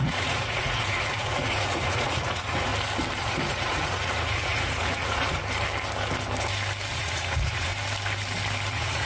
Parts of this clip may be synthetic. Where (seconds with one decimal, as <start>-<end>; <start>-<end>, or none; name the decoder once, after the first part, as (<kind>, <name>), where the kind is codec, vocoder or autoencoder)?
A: 0.0-2.7 (vocoder, Vocos); 3.2-5.4; 6.9-7.7; 8.7-9.1